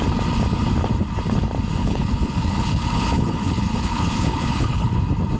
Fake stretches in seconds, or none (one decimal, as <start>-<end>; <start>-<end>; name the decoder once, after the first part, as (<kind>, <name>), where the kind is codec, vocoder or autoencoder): 1.8-5.0 (codec, HILCodec)